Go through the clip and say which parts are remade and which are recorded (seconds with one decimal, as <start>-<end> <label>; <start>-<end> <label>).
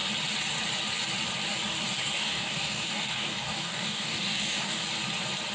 0.0-2.0 recorded; 2.0-4.8 remade; 4.8-5.5 recorded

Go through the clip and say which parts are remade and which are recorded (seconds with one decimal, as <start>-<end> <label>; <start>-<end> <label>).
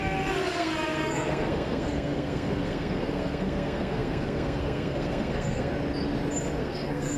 0.0-5.7 remade; 5.7-6.6 recorded; 6.6-7.2 remade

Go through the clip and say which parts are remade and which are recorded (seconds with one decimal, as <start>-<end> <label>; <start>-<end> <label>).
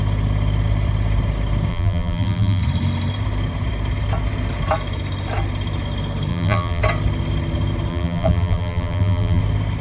0.0-1.7 recorded; 1.7-2.6 remade; 2.6-6.3 recorded; 6.3-6.8 remade; 6.8-7.9 recorded; 7.9-9.4 remade; 9.4-9.8 recorded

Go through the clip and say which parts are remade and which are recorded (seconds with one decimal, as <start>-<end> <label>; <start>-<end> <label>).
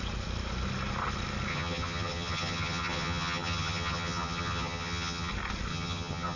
0.0-1.5 recorded; 1.5-5.3 remade; 5.3-5.7 recorded; 5.7-6.4 remade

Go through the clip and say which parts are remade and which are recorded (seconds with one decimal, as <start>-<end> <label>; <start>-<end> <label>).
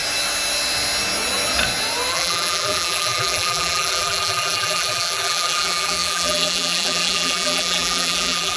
0.0-2.1 recorded; 2.1-8.6 remade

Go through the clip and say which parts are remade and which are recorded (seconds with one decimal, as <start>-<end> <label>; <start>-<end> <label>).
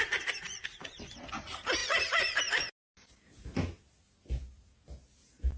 0.0-5.6 recorded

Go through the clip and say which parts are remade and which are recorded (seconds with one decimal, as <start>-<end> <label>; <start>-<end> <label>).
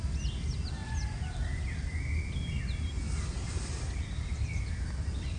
0.0-5.4 recorded